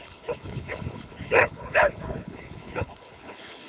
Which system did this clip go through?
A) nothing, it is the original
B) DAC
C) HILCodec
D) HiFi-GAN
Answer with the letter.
C